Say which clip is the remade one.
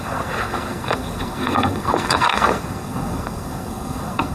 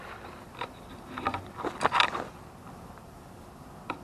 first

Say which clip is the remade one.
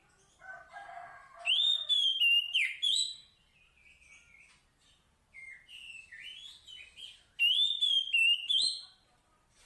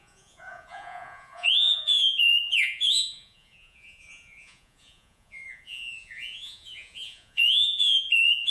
second